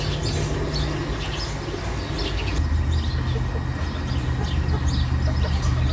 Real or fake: real